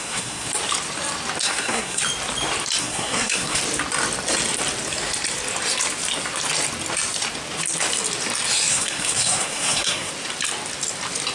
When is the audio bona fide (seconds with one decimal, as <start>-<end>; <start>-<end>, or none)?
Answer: 0.5-1.4; 2.0-2.8; 3.6-8.7; 10.1-11.3